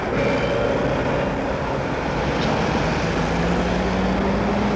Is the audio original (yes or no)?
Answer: yes